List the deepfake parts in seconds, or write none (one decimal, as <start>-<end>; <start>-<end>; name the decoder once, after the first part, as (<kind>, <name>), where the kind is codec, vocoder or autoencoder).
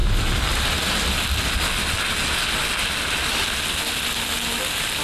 none